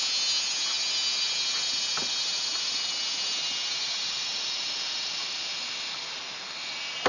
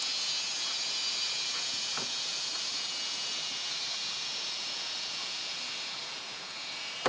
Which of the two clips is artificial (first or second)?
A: second